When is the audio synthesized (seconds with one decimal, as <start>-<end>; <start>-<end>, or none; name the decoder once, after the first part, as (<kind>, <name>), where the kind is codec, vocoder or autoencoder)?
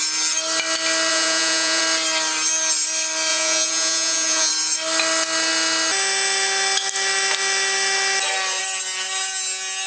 1.1-1.8 (vocoder, Vocos); 3.3-4.5